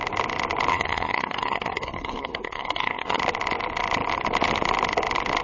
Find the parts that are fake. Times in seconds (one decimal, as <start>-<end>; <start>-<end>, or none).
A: 0.7-3.2